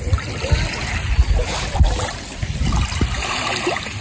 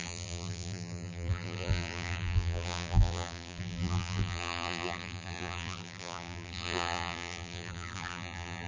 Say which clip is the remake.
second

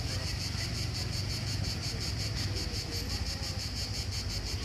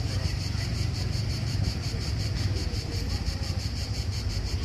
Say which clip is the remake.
second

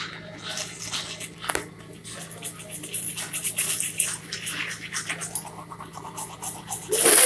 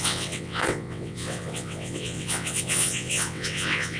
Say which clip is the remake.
second